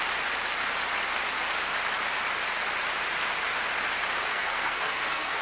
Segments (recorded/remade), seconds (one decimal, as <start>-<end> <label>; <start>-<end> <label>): 0.0-4.3 recorded; 4.3-5.4 remade